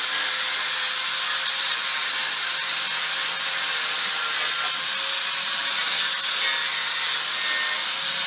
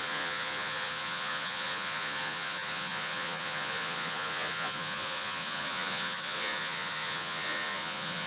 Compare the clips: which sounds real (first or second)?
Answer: first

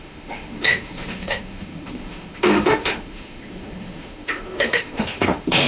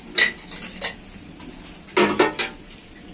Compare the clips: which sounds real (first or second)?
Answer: second